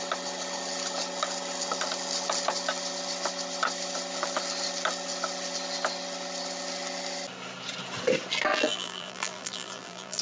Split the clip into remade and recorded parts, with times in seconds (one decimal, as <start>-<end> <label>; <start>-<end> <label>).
0.0-8.5 recorded; 8.5-10.2 remade